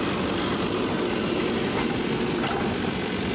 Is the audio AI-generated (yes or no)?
no